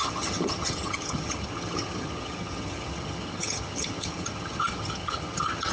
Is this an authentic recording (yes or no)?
no